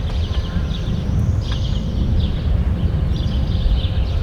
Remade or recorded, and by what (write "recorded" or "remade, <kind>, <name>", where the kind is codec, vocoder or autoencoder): recorded